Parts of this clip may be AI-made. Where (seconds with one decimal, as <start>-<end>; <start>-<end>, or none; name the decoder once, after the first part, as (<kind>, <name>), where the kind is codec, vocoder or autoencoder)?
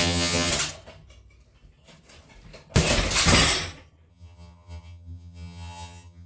0.0-0.5 (vocoder, HiFi-GAN); 4.1-6.3